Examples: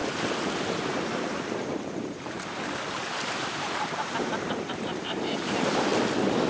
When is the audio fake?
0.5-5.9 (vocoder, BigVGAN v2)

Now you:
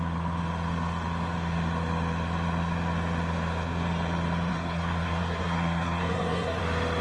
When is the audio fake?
4.5-6.6 (codec, SNAC)